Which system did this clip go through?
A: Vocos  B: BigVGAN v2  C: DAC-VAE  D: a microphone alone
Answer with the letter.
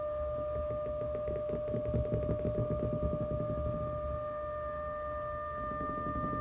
D